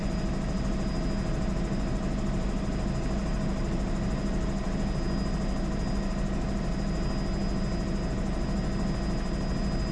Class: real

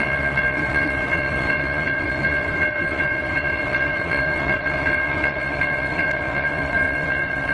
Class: fake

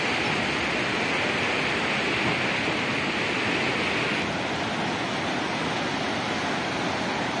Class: real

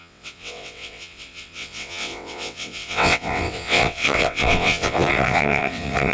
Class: fake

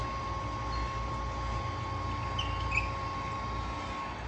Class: real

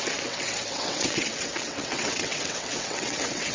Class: fake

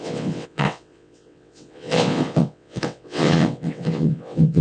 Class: fake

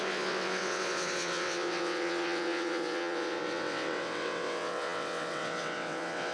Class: fake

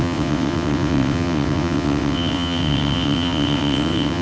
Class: fake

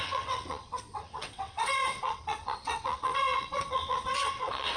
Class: fake